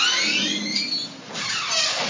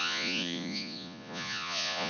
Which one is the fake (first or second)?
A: second